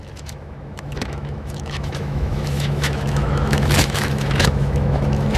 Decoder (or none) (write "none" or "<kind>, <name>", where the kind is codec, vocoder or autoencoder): autoencoder, DAC-VAE